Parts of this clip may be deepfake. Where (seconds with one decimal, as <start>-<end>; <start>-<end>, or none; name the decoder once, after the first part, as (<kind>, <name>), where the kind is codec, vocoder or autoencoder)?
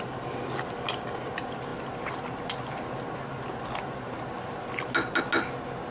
none